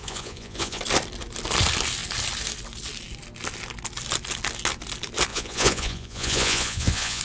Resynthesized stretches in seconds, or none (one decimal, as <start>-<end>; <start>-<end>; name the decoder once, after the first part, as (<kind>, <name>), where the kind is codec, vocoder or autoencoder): 0.0-0.8 (vocoder, Vocos); 5.3-7.2